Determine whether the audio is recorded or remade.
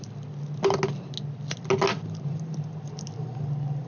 recorded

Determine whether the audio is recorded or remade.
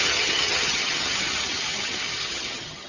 remade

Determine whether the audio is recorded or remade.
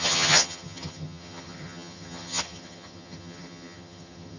remade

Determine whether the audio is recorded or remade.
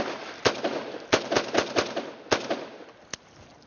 recorded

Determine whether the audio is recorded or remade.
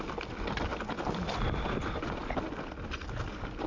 recorded